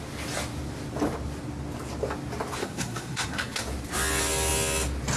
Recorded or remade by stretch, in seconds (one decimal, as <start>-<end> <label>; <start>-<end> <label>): 0.0-2.6 recorded; 2.6-3.6 remade; 3.6-5.2 recorded